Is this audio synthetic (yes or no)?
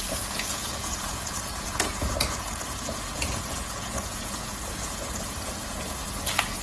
yes